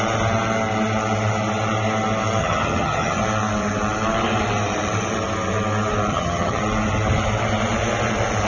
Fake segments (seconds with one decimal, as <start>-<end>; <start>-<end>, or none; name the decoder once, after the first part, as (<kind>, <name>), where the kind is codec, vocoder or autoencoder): 2.4-3.2 (vocoder, HiFi-GAN); 6.1-6.6